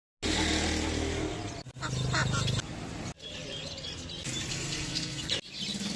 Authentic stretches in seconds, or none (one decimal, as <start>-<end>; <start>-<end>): 0.0-4.5; 5.3-6.0